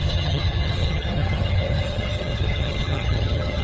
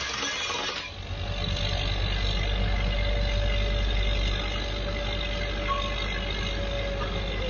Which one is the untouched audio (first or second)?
second